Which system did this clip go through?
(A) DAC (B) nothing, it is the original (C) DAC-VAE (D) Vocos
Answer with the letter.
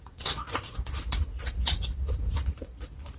D